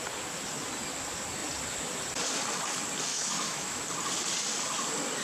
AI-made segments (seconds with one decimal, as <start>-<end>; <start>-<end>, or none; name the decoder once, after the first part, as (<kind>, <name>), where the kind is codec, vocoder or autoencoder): 3.1-3.8 (autoencoder, DAC-VAE)